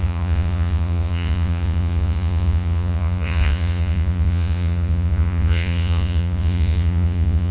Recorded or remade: remade